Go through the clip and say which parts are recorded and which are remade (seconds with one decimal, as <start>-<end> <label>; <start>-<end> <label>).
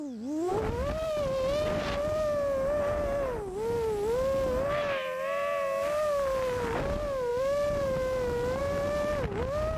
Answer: 0.0-9.8 recorded